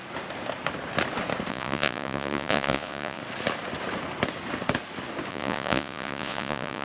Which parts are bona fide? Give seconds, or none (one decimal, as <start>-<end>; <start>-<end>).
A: 0.0-1.5; 3.2-5.3